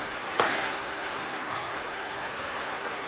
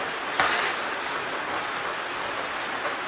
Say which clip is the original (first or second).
second